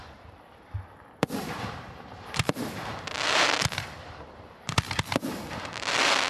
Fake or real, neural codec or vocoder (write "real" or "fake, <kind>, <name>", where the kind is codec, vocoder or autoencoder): fake, vocoder, BigVGAN v2